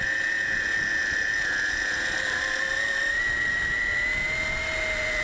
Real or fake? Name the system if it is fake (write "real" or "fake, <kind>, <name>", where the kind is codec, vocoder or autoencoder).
real